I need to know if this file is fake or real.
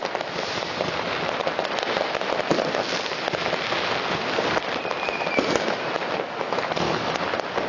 real